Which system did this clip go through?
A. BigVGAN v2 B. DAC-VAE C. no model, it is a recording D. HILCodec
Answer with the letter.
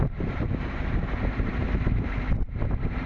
A